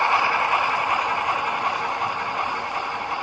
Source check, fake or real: real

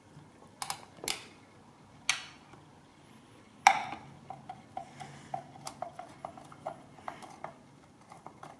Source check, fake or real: real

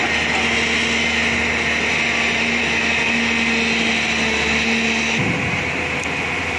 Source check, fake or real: real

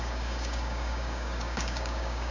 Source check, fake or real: fake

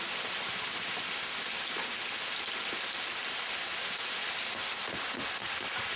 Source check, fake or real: real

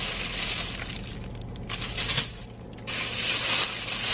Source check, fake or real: real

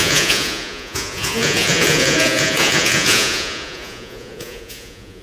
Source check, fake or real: fake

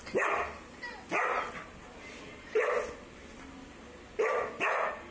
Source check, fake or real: real